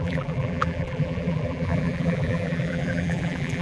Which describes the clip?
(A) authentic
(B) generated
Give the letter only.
B